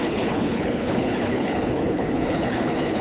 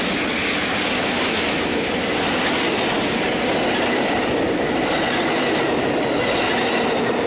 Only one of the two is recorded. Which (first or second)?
second